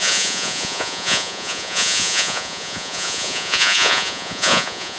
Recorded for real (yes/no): no